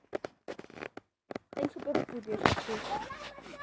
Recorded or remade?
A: recorded